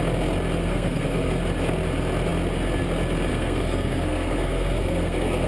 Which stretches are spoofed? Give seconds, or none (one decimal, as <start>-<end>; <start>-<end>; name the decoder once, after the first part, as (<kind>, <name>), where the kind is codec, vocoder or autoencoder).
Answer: 0.6-1.3 (codec, SNAC); 3.3-5.5